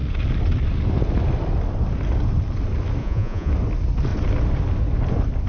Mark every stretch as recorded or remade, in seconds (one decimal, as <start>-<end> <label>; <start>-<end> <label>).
0.0-3.0 recorded; 3.0-3.5 remade; 3.5-5.5 recorded